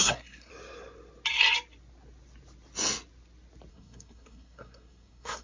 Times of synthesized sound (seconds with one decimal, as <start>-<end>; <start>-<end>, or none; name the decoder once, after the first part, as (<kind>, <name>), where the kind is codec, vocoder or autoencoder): 0.0-0.5 (codec, SNAC); 3.7-5.4